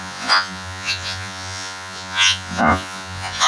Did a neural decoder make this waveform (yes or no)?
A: yes